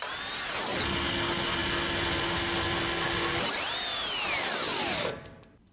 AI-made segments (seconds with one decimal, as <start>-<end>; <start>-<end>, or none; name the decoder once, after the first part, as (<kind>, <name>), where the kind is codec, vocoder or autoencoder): none